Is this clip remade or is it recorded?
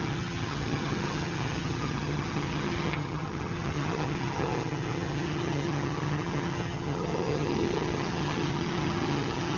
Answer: remade